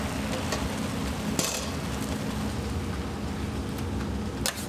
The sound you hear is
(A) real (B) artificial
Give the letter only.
A